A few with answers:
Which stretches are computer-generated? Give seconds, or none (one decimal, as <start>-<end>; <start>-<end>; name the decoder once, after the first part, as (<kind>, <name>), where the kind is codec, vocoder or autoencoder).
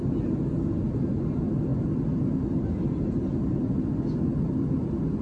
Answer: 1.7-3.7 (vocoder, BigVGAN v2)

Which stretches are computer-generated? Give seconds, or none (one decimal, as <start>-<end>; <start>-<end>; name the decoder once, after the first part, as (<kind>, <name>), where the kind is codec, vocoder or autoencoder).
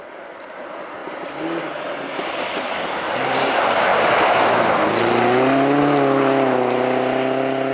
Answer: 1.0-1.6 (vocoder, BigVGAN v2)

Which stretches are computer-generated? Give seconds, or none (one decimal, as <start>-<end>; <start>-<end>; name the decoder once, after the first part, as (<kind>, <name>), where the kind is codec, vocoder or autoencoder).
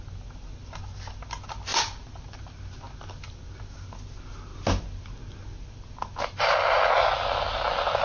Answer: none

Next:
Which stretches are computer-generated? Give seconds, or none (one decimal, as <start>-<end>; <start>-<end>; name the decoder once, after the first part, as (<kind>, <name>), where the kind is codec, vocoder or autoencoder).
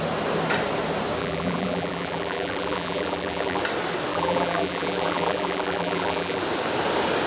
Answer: 1.2-3.6 (vocoder, BigVGAN v2); 4.1-6.4